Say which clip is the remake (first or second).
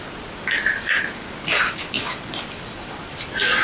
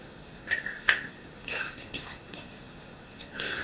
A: second